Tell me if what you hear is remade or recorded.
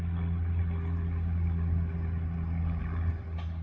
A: recorded